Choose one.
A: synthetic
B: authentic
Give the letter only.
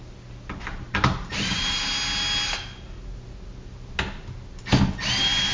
B